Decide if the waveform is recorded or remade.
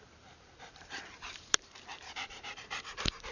remade